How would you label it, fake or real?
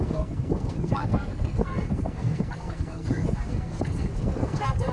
fake